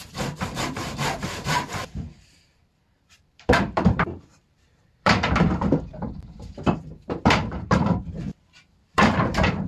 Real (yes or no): no